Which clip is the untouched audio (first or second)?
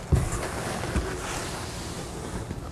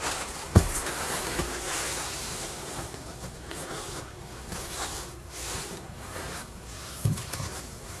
first